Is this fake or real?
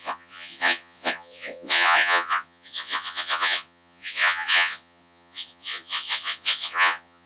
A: fake